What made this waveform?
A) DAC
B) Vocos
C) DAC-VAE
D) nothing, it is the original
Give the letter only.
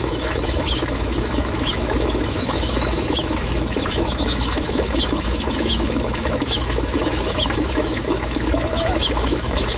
C